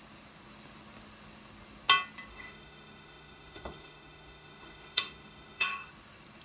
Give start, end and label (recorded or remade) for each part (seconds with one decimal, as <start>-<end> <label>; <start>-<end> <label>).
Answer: 0.0-2.3 recorded; 2.3-5.9 remade; 5.9-6.4 recorded